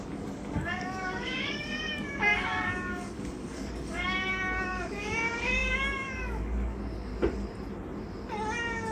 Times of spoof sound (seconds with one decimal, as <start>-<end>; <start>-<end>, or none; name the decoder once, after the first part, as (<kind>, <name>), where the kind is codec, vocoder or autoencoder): 0.0-7.1 (codec, DAC)